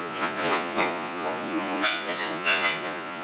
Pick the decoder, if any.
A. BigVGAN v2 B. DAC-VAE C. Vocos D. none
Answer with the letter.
C